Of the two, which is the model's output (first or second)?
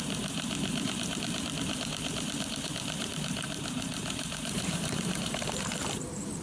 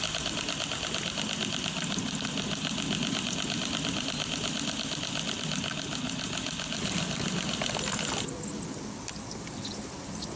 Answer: first